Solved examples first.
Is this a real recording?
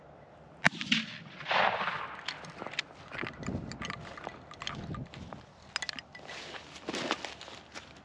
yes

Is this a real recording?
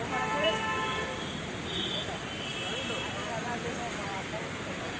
no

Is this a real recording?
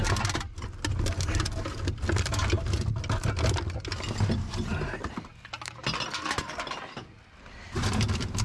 yes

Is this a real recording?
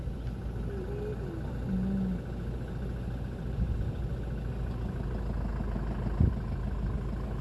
yes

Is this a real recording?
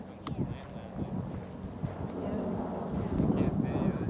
yes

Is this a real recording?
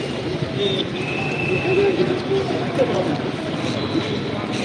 yes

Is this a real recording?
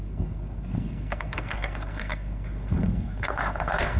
no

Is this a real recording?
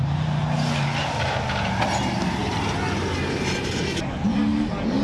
yes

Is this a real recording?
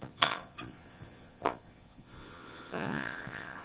no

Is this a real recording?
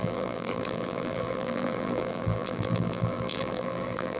no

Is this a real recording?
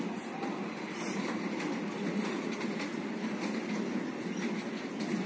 yes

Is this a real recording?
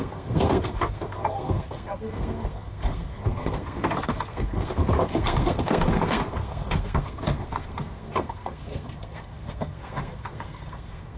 no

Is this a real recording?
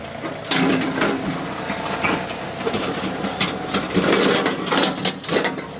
yes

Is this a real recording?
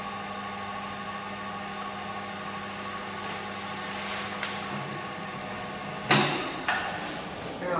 yes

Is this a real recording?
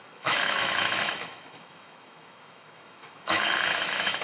no